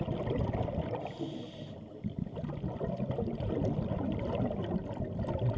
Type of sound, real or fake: real